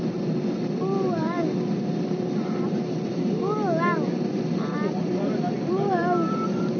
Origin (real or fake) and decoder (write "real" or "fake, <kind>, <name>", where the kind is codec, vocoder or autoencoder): fake, vocoder, BigVGAN v2